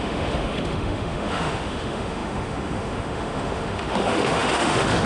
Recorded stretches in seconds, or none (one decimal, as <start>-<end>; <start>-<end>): none